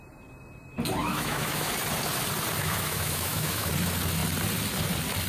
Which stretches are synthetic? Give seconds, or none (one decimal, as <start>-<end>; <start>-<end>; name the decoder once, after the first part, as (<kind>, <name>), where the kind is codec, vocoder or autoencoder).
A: 1.0-1.7 (autoencoder, DAC-VAE); 2.6-3.7